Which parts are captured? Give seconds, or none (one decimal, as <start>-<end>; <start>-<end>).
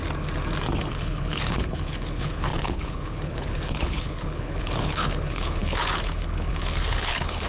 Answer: 0.0-0.8